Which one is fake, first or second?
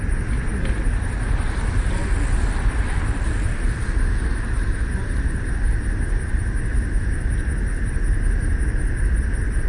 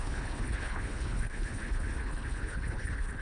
second